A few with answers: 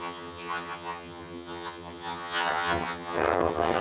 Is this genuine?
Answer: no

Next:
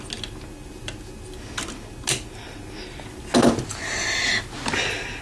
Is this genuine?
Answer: yes